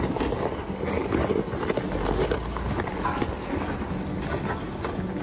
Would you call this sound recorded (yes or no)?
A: yes